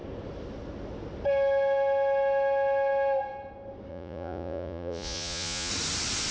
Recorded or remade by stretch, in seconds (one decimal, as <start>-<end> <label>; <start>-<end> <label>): 0.0-3.9 recorded; 3.9-5.7 remade; 5.7-6.3 recorded